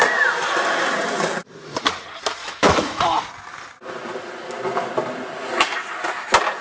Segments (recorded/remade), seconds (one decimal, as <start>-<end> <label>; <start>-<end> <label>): 0.0-2.4 recorded; 2.4-3.0 remade; 3.0-6.6 recorded